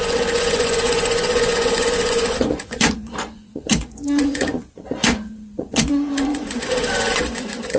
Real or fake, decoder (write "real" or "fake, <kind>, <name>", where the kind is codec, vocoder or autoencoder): fake, vocoder, Vocos